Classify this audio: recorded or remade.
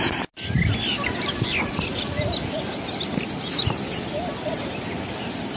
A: recorded